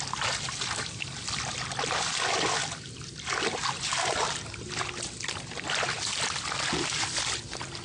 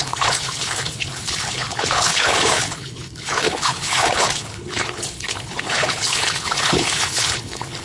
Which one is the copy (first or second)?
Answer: second